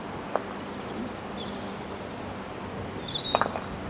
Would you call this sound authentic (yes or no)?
yes